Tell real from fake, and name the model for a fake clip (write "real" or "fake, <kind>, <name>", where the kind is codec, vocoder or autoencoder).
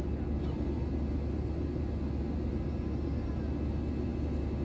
real